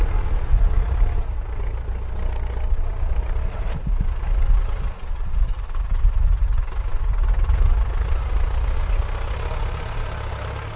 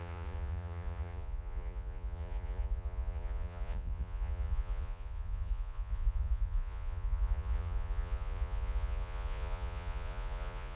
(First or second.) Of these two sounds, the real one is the first